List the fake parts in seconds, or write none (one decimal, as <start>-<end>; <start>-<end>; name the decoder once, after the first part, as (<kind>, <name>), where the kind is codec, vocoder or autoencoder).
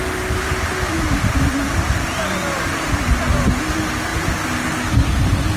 none